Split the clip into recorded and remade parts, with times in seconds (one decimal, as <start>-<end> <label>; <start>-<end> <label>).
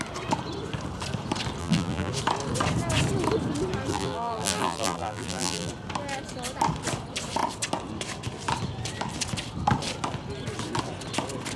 0.0-1.6 recorded; 1.6-2.1 remade; 2.1-3.9 recorded; 3.9-5.7 remade; 5.7-11.6 recorded